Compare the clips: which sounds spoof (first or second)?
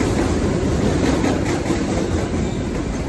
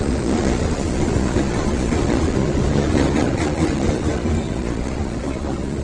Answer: second